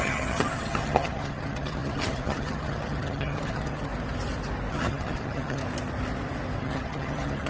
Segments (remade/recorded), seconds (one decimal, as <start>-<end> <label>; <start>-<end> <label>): 0.0-3.9 remade; 3.9-4.7 recorded; 4.7-5.6 remade; 5.6-6.6 recorded; 6.6-7.5 remade